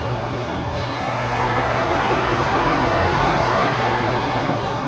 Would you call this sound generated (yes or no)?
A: yes